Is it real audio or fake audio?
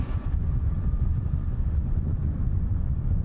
fake